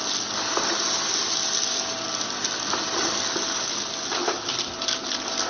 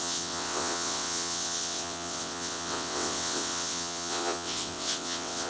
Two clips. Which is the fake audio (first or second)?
second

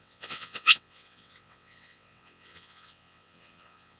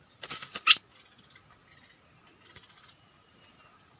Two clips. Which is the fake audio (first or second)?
first